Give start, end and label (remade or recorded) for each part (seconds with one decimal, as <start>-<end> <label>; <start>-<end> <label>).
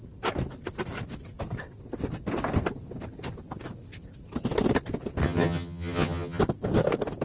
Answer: 0.0-5.2 recorded; 5.2-6.4 remade; 6.4-7.2 recorded